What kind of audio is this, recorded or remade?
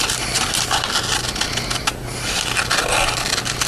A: recorded